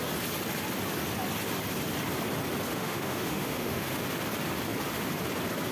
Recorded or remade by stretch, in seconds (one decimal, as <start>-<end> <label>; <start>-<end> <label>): 0.0-2.7 recorded; 2.7-4.0 remade; 4.0-5.7 recorded